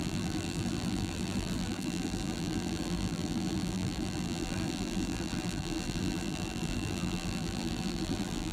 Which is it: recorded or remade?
remade